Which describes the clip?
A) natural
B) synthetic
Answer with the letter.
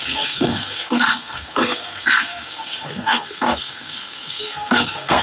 B